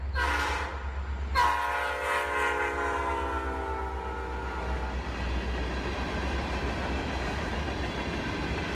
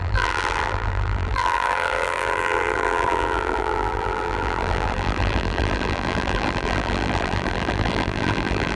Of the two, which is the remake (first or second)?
second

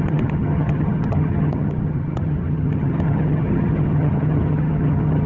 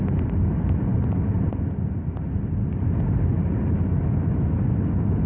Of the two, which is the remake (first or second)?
first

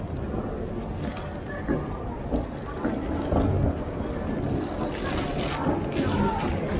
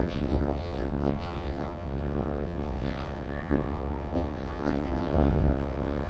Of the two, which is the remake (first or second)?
second